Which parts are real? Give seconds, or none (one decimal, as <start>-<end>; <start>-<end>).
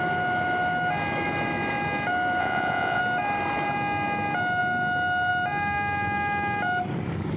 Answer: 0.0-2.4; 3.0-7.4